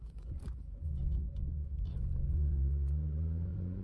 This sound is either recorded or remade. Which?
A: remade